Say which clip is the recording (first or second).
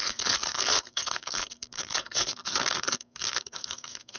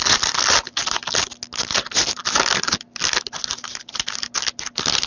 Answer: second